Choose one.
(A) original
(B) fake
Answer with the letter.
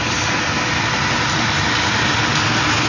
A